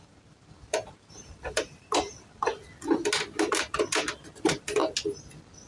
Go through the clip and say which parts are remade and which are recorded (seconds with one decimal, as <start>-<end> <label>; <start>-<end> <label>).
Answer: 0.0-2.5 remade; 2.5-4.2 recorded; 4.2-4.8 remade; 4.8-5.7 recorded